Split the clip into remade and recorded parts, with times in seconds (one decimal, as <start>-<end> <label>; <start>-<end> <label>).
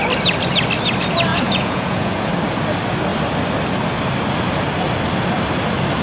0.0-1.3 recorded; 1.3-2.3 remade; 2.3-6.0 recorded